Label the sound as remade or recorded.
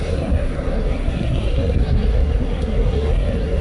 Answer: remade